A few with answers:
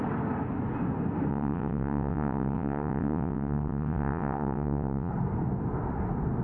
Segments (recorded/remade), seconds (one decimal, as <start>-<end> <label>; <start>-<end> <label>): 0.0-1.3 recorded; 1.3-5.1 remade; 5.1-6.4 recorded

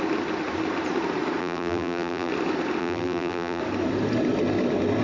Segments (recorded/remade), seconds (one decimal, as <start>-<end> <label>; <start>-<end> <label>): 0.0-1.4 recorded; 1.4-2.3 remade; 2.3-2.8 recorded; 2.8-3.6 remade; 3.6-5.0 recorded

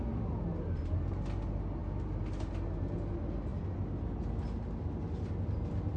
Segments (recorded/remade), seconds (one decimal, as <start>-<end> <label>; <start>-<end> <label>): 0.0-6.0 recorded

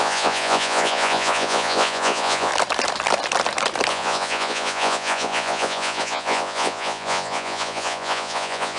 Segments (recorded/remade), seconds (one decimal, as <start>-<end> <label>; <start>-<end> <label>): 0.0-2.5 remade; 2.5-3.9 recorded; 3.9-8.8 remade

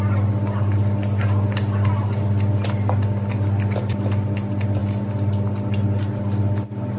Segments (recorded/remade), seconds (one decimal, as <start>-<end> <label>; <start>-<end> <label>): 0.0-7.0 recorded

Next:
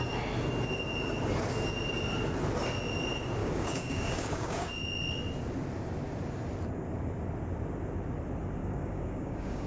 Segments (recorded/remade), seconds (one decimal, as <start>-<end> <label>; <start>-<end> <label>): 0.0-3.4 recorded; 3.4-4.7 remade; 4.7-8.6 recorded; 8.6-9.7 remade